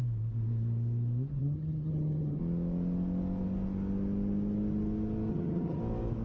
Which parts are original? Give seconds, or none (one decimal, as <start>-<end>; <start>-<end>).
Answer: 0.0-1.4; 2.4-5.3; 5.8-6.2